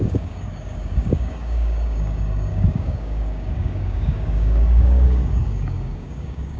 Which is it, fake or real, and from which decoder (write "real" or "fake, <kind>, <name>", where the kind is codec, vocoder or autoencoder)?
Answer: fake, codec, DAC